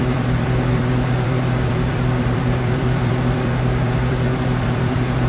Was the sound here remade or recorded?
remade